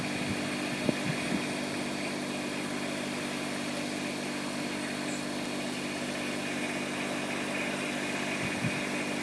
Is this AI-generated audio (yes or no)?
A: no